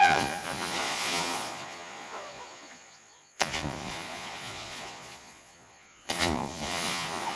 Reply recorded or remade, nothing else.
remade